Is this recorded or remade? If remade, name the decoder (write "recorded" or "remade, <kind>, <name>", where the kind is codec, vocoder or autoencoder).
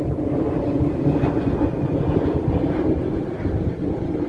recorded